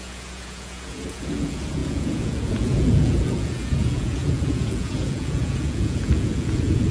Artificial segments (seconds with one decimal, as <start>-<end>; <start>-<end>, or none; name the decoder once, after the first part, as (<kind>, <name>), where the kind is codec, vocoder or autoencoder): 0.0-6.9 (vocoder, Vocos)